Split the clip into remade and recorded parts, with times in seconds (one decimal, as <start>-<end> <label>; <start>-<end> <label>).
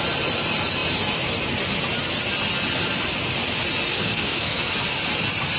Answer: 0.0-3.9 recorded; 3.9-4.7 remade; 4.7-5.6 recorded